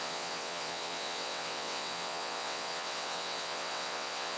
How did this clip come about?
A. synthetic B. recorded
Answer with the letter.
A